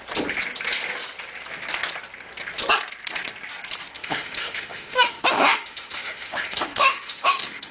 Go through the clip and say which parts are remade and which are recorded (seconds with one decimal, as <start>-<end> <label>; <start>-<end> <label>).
0.0-3.9 recorded; 3.9-7.7 remade